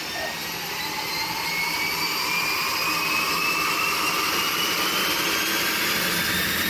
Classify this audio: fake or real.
fake